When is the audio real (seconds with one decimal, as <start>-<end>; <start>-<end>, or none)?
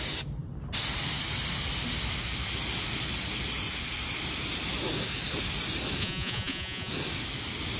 0.0-6.0; 6.9-7.8